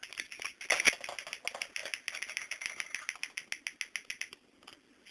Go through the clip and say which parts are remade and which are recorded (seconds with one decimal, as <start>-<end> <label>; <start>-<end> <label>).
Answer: 0.0-5.1 recorded